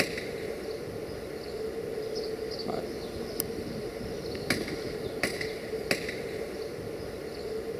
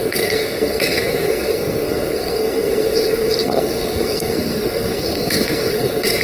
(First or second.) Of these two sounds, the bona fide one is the first